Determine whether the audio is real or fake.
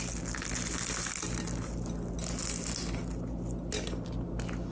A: real